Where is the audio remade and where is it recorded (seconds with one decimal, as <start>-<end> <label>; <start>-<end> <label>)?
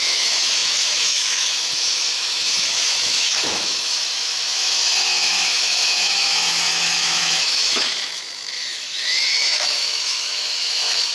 0.0-11.1 remade